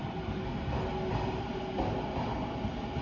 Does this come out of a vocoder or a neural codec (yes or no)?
no